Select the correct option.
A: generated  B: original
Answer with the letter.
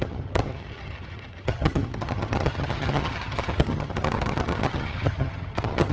A